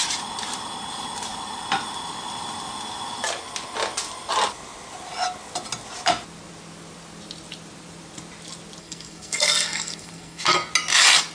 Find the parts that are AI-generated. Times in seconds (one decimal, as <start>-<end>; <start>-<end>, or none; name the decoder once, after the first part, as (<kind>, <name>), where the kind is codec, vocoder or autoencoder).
8.8-10.7 (codec, SNAC)